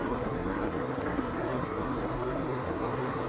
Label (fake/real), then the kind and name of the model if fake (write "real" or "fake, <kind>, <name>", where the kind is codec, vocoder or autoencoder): fake, codec, SNAC